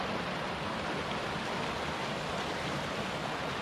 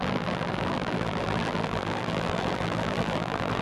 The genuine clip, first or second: first